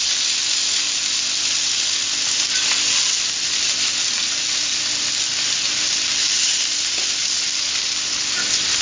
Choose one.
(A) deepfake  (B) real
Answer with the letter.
B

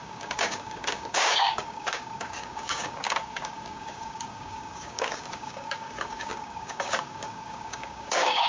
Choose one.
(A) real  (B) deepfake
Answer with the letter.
B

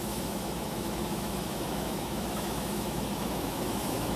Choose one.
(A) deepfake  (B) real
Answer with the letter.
A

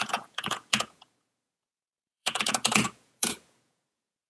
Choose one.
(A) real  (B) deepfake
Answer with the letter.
B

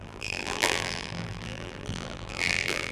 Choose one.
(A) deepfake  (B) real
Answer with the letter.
A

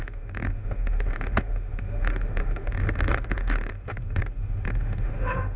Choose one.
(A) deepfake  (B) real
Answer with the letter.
A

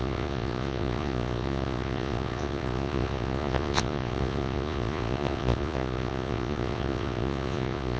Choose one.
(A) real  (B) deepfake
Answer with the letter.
B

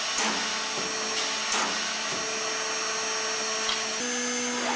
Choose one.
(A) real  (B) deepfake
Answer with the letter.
A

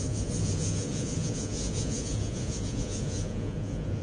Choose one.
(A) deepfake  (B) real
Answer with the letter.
A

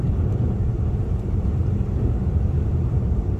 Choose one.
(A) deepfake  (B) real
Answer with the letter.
A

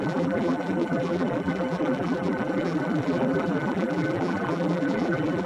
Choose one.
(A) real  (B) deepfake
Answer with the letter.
B